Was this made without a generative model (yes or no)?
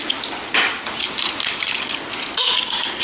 yes